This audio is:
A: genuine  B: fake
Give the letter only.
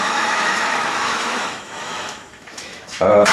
B